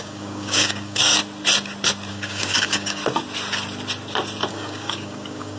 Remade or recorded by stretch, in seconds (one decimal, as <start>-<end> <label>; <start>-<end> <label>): 0.0-1.2 remade; 1.2-2.1 recorded; 2.1-3.0 remade; 3.0-4.5 recorded; 4.5-5.6 remade